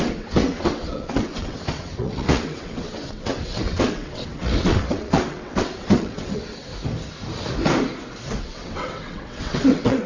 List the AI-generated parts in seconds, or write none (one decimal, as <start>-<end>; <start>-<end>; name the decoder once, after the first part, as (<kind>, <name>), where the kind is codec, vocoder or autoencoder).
0.0-6.7 (vocoder, WaveNeXt); 8.4-10.1